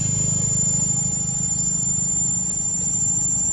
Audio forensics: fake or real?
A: real